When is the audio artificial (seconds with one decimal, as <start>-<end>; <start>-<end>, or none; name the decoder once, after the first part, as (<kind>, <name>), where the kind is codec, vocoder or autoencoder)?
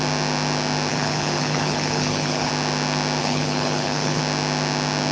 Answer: 0.9-2.5 (codec, HILCodec); 3.2-4.2